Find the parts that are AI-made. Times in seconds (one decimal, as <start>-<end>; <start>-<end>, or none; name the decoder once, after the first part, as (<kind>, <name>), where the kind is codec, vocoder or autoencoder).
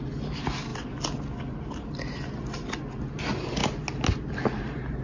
none